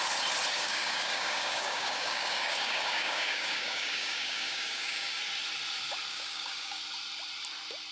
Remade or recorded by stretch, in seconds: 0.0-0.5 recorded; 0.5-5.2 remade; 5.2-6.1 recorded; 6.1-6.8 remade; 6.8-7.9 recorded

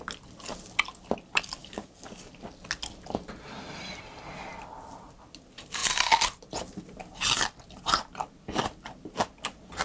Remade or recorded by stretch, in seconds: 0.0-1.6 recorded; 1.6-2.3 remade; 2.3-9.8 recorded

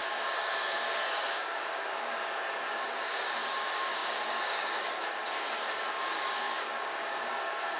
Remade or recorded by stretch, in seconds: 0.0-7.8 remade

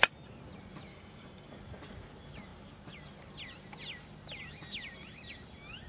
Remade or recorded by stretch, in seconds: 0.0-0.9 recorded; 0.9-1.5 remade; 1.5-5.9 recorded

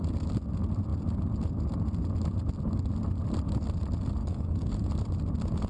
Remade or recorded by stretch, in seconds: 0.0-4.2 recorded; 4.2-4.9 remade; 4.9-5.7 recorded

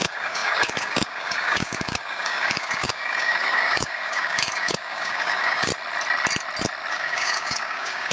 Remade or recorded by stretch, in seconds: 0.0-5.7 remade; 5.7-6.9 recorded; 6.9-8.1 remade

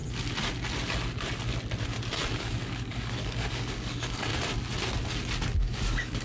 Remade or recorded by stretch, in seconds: 0.0-2.4 recorded; 2.4-4.3 remade; 4.3-5.6 recorded; 5.6-6.2 remade